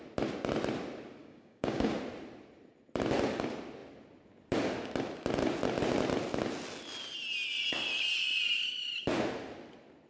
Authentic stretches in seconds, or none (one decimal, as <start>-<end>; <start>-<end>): 0.0-1.2; 1.9-10.1